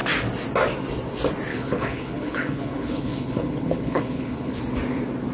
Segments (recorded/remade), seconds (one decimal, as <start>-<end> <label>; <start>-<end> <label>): 0.0-1.5 recorded; 1.5-4.6 remade; 4.6-5.3 recorded